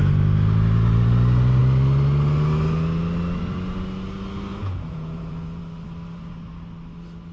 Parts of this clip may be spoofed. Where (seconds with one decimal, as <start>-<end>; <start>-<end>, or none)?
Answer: 4.5-5.6